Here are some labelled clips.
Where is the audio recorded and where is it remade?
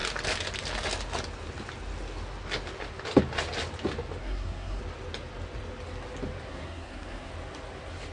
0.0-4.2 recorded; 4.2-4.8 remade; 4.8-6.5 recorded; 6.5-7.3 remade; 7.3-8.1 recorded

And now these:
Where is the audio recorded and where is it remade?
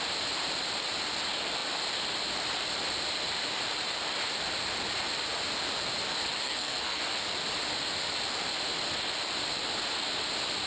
0.0-6.4 recorded; 6.4-7.0 remade; 7.0-10.7 recorded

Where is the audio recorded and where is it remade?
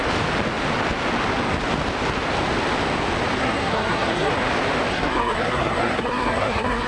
0.0-3.4 recorded; 3.4-4.3 remade; 4.3-4.9 recorded; 4.9-6.9 remade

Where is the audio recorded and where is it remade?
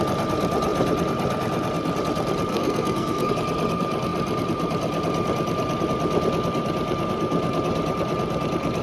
0.0-2.5 recorded; 2.5-3.3 remade; 3.3-8.8 recorded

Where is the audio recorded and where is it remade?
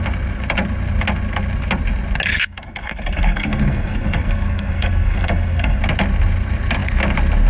0.0-2.3 recorded; 2.3-5.8 remade; 5.8-7.5 recorded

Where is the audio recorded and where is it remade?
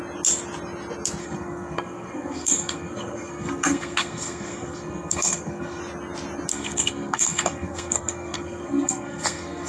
0.0-1.2 recorded; 1.2-5.8 remade; 5.8-6.5 recorded; 6.5-9.7 remade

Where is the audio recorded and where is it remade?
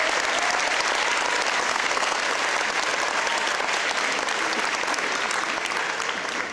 0.0-1.7 recorded; 1.7-2.3 remade; 2.3-6.5 recorded